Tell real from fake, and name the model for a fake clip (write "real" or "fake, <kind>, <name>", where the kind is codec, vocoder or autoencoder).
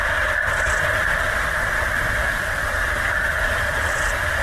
real